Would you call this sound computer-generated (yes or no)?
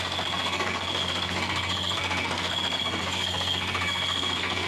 yes